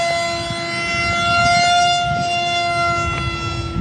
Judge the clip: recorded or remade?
recorded